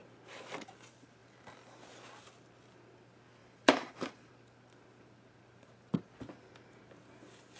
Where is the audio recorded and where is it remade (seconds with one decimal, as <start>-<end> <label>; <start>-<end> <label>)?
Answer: 0.0-1.2 recorded; 1.2-1.8 remade; 1.8-3.4 recorded; 3.4-4.3 remade; 4.3-7.6 recorded